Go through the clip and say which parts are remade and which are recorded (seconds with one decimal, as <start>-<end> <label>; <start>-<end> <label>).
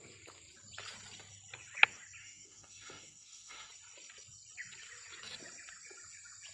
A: 0.0-2.2 recorded; 2.2-3.7 remade; 3.7-6.5 recorded